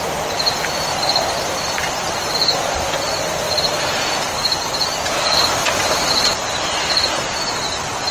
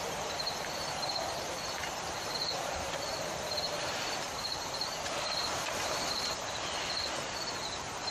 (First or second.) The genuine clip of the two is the first